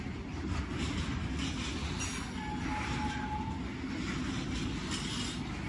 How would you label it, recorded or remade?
recorded